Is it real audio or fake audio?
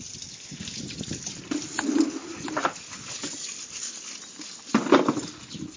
real